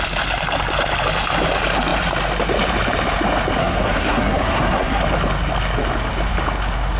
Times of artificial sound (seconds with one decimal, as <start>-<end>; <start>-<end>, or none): 3.6-5.0